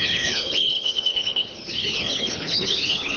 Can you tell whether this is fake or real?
fake